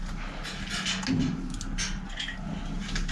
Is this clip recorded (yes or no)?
yes